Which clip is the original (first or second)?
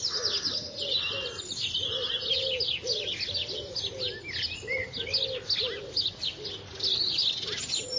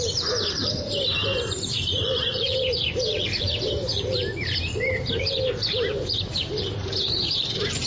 first